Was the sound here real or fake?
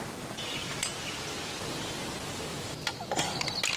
real